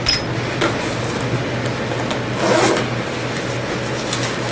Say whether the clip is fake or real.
real